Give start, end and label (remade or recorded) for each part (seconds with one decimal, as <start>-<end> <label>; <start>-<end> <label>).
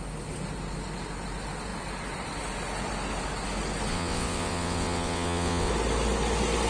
0.0-3.9 recorded; 3.9-5.7 remade; 5.7-6.7 recorded